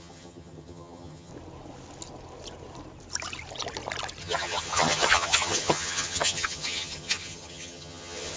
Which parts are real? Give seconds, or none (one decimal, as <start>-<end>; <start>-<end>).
1.3-4.2